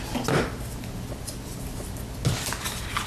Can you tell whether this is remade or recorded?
recorded